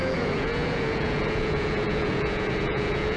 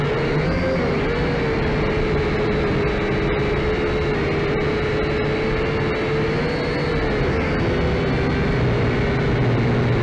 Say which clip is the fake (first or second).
first